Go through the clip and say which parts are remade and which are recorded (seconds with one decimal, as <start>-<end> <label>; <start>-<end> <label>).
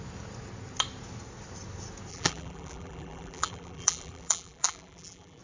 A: 0.0-2.1 recorded; 2.1-5.4 remade